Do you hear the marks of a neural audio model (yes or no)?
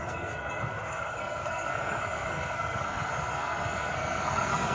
yes